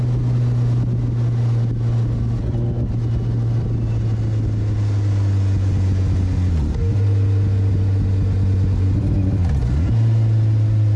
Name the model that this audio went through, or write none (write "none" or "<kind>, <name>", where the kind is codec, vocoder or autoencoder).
none